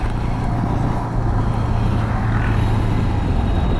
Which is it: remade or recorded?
recorded